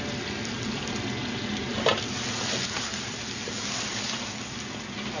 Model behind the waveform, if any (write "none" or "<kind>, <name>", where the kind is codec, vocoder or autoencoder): none